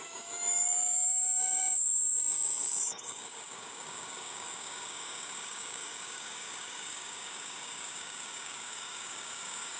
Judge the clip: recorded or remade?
remade